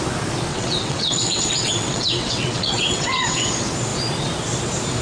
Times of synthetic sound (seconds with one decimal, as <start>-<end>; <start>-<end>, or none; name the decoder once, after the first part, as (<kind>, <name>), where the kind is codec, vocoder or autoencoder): 0.5-3.5 (vocoder, WaveNeXt)